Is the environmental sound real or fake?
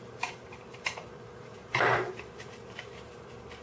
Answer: fake